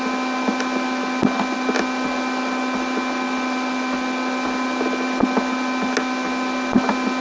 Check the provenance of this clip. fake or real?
real